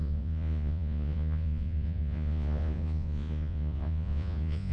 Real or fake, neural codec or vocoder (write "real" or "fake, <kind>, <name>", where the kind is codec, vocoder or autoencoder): fake, vocoder, Vocos